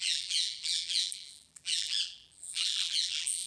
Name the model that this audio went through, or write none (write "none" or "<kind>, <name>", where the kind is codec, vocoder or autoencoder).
vocoder, BigVGAN v2